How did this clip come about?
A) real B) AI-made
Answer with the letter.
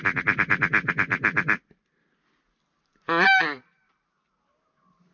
A